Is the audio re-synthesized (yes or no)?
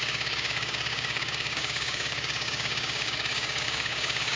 yes